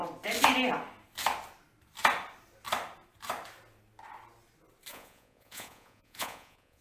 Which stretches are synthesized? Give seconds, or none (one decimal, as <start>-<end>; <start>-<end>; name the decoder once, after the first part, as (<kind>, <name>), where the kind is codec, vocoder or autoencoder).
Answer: 4.9-6.8 (vocoder, Vocos)